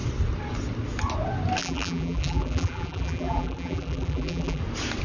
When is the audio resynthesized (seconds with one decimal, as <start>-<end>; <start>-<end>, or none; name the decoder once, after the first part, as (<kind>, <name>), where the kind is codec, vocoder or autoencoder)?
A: 1.6-4.6 (vocoder, BigVGAN v2)